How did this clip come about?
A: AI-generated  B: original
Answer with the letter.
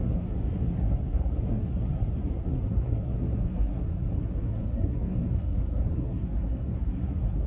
A